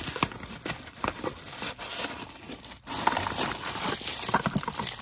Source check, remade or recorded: recorded